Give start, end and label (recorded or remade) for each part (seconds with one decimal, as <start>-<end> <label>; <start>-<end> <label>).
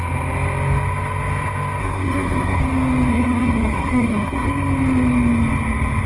0.0-1.8 recorded; 1.8-2.6 remade; 2.6-3.1 recorded; 3.1-4.5 remade; 4.5-6.1 recorded